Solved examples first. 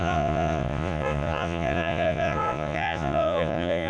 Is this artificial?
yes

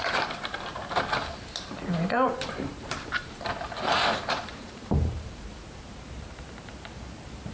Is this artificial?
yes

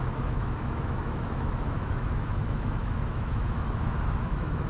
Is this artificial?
yes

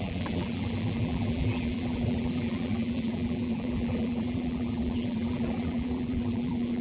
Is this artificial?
yes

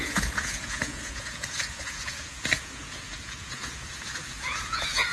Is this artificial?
yes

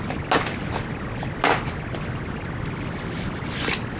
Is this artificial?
no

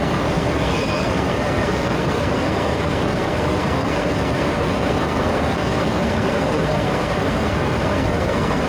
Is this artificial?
yes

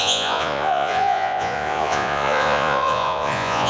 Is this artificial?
yes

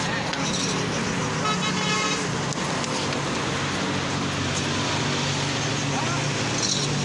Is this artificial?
no